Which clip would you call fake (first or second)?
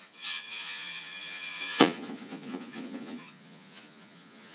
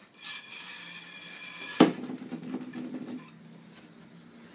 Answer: first